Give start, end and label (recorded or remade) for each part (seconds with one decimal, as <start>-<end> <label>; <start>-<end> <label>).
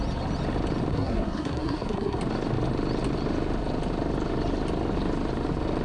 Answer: 0.0-0.9 recorded; 0.9-2.2 remade; 2.2-5.8 recorded